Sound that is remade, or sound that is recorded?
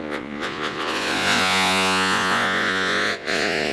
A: remade